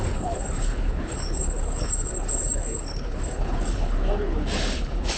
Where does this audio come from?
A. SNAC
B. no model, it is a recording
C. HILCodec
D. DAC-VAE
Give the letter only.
C